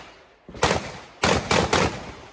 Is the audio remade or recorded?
recorded